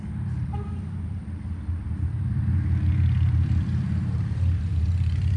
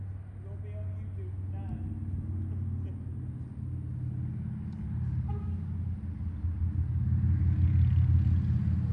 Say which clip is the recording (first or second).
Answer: second